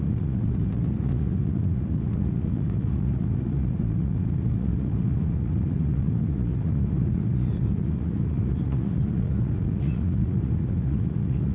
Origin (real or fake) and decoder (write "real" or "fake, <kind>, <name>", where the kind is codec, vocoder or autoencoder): fake, vocoder, Vocos